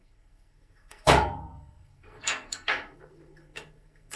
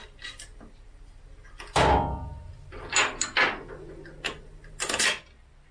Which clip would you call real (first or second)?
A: second